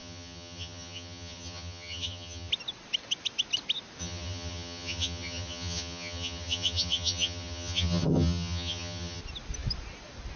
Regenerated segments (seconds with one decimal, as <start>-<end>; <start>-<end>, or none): 0.0-2.5; 4.0-9.2